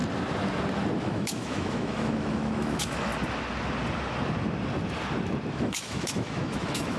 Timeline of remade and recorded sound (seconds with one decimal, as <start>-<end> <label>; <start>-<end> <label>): 0.0-1.0 recorded; 1.0-3.1 remade; 3.1-5.5 recorded; 5.5-7.0 remade

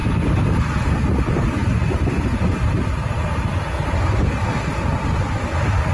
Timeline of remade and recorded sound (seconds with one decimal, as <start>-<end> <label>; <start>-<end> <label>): 0.0-5.9 recorded

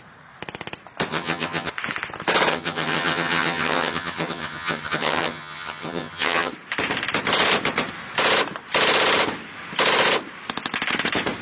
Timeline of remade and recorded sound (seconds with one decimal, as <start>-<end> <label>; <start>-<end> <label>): 0.0-1.1 recorded; 1.1-1.7 remade; 1.7-2.5 recorded; 2.5-6.5 remade; 6.5-11.4 recorded